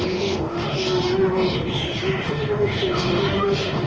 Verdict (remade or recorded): remade